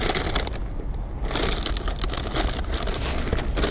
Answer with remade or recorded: recorded